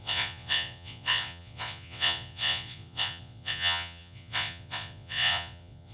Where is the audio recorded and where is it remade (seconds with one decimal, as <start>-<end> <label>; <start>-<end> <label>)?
0.0-5.9 remade